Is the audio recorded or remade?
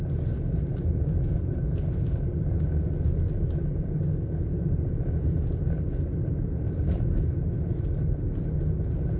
recorded